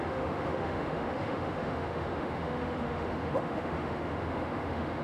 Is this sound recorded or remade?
remade